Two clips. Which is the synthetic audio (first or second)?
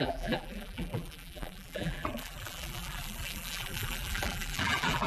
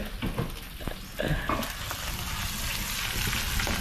first